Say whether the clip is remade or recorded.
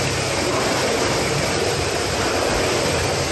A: recorded